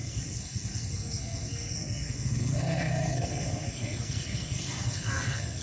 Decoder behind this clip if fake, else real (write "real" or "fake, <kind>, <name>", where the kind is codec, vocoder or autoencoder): fake, codec, SNAC